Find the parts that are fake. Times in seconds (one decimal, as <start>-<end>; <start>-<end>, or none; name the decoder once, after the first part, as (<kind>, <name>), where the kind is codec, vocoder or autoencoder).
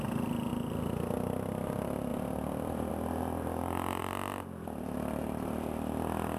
0.5-1.1 (vocoder, BigVGAN v2); 2.1-2.9; 4.0-4.8